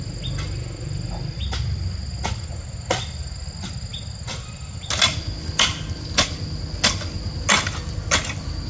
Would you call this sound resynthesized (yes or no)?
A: no